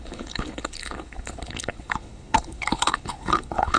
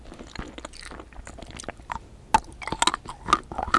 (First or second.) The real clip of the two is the second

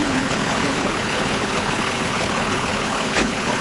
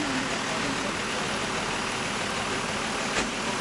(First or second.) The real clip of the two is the second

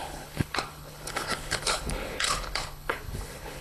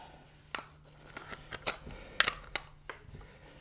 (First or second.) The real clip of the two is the second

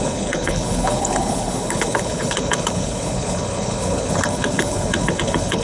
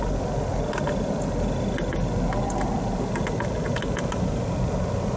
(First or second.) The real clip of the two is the second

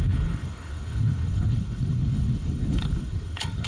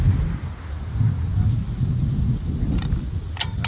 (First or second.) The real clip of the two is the second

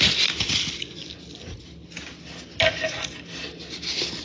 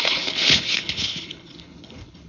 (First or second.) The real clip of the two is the first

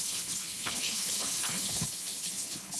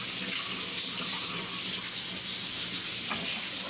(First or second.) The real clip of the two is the second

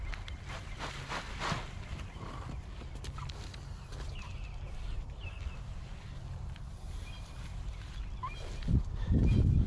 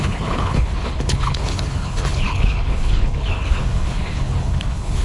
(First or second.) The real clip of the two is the first